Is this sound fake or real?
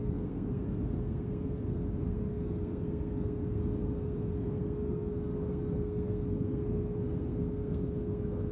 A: fake